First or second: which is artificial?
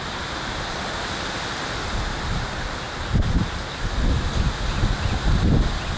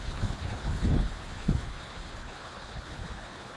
second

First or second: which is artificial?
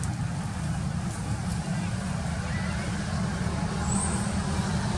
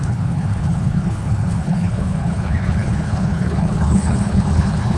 second